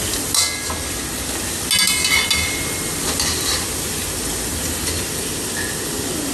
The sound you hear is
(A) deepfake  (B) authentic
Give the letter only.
B